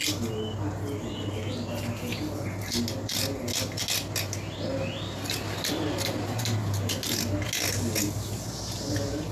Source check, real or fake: real